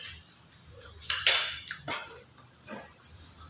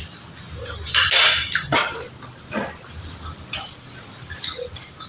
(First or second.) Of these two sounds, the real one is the second